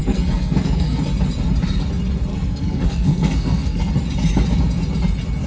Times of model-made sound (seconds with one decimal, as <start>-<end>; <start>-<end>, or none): 0.0-1.0; 2.3-3.9